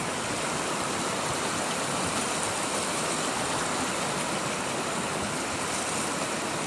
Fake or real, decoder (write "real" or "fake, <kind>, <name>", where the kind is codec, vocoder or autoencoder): real